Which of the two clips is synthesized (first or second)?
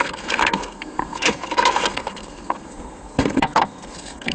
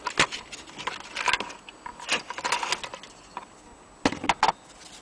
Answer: first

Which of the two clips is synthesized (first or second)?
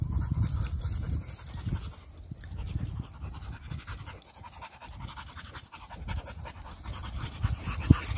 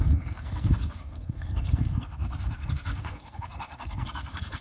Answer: second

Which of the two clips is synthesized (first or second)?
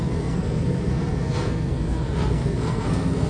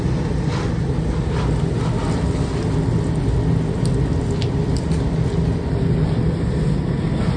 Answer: first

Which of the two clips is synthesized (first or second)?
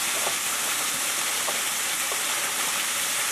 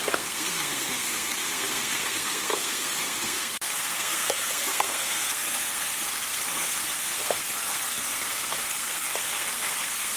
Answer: second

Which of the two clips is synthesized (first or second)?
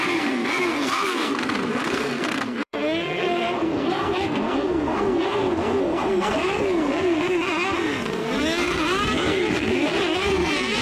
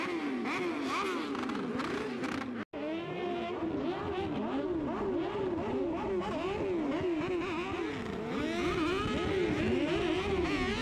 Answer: first